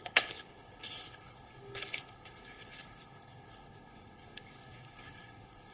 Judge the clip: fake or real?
fake